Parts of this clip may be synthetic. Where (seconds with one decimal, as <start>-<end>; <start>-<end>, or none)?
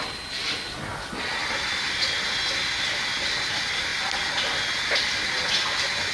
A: none